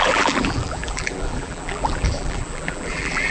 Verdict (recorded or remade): remade